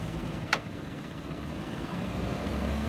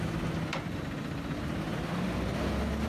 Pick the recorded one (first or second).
second